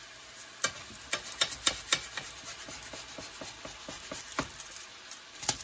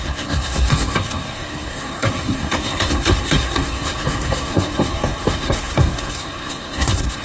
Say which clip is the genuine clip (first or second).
first